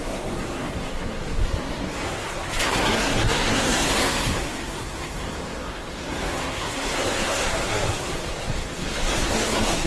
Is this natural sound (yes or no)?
no